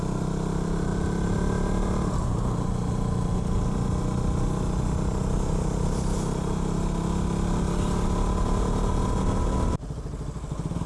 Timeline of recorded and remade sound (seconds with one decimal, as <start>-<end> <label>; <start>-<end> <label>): 0.0-10.9 recorded